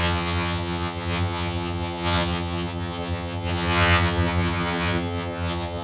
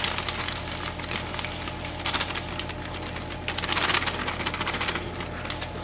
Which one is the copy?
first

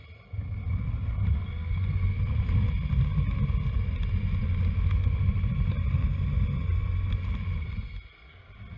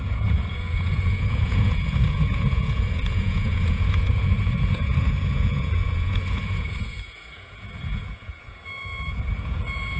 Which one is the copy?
second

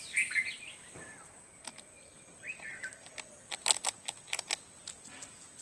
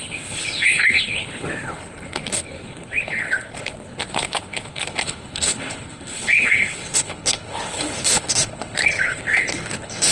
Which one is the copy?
second